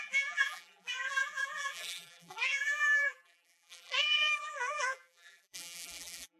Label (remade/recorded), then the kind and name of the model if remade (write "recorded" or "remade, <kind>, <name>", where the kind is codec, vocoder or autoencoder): remade, vocoder, BigVGAN v2